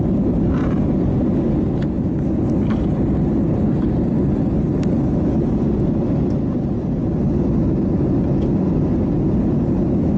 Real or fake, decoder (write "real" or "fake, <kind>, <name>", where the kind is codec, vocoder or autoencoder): real